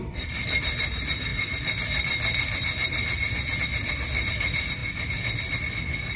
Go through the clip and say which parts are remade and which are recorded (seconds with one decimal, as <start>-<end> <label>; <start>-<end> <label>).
0.0-6.2 recorded